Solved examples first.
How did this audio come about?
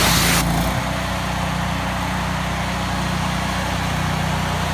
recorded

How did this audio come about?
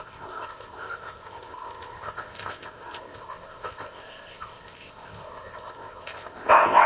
remade